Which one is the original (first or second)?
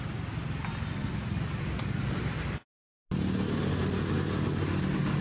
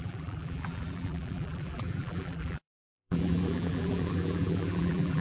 first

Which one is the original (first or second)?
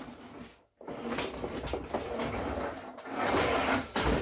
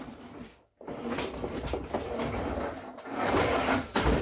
first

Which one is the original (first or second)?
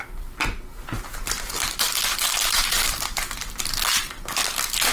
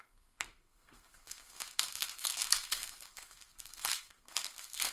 first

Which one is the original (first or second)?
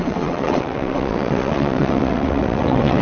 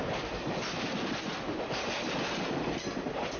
second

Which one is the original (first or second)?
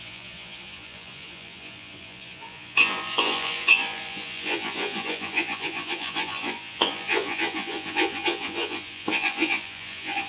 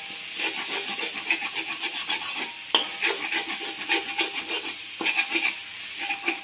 second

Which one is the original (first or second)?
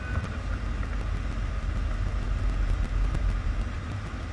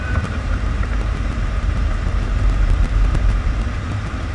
first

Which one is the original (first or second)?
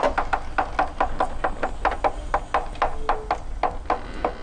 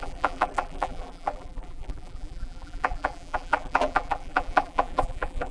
first